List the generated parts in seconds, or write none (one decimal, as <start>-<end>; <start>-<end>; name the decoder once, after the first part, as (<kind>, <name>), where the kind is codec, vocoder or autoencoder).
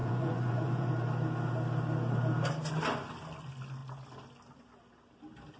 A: 0.0-0.9 (vocoder, Vocos)